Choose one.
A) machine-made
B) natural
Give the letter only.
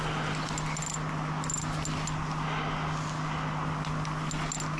B